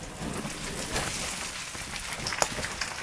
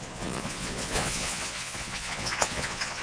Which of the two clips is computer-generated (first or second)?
second